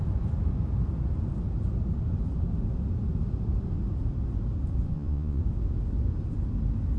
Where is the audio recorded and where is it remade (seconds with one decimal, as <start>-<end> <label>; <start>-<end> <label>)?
0.0-4.9 recorded; 4.9-5.4 remade; 5.4-7.0 recorded